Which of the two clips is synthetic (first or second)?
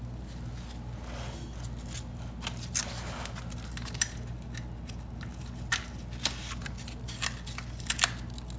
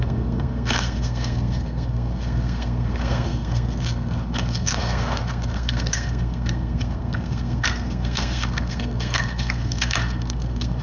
second